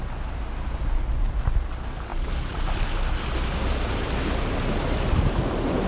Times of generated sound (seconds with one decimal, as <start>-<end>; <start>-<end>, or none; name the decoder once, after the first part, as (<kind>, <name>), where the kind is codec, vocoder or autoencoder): none